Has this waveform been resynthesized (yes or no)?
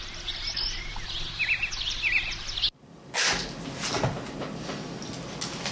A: no